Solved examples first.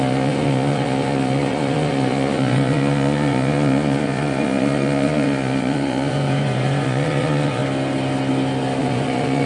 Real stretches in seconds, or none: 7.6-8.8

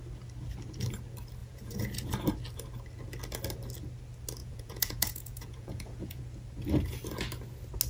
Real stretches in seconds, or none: 0.0-1.4; 2.1-4.4; 6.2-7.9